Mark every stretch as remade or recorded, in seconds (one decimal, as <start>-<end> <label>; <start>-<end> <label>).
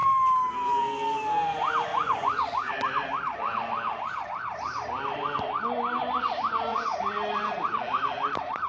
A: 0.0-1.9 recorded; 1.9-2.7 remade; 2.7-6.7 recorded; 6.7-7.4 remade; 7.4-8.7 recorded